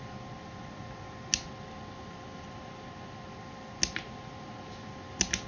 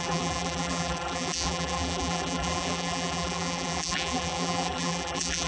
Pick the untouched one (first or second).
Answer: first